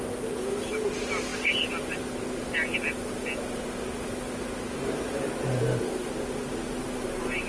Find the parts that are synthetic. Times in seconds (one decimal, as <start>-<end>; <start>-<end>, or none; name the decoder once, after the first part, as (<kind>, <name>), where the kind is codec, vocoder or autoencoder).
none